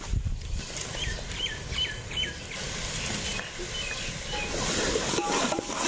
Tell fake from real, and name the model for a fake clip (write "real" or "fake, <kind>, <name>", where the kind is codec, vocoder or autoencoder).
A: fake, vocoder, BigVGAN v2